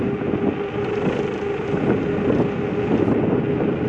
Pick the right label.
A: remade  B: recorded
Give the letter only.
B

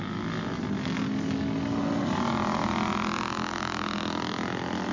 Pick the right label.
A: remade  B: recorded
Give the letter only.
B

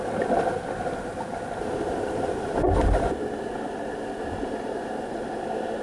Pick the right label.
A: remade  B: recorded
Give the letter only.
B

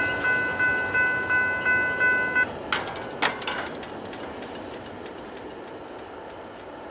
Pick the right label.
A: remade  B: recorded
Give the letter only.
B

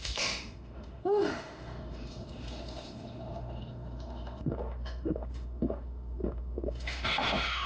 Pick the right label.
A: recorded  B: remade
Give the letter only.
B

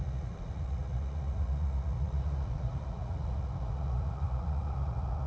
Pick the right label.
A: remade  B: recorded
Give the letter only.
A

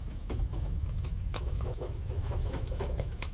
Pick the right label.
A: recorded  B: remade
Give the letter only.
B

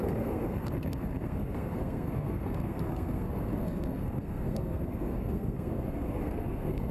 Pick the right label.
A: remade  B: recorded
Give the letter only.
A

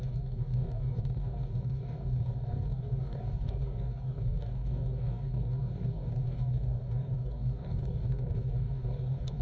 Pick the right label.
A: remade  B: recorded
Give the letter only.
A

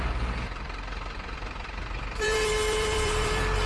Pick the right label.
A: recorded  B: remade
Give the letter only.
B